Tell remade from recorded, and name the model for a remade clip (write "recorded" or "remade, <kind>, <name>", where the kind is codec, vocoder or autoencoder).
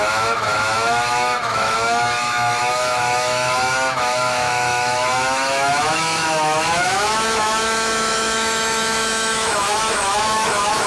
remade, autoencoder, DAC-VAE